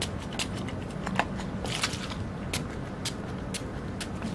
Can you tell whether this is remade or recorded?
recorded